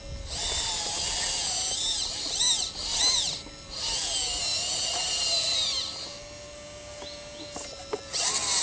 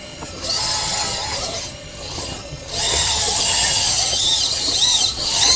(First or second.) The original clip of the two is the first